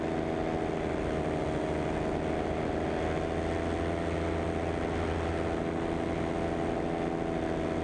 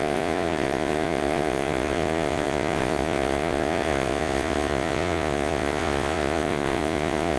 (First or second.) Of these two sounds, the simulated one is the second